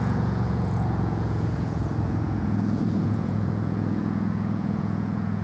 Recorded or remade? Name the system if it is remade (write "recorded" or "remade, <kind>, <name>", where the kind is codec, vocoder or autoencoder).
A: remade, vocoder, Vocos